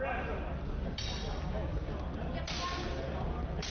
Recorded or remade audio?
recorded